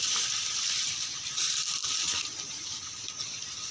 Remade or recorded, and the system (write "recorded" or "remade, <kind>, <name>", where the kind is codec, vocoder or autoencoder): recorded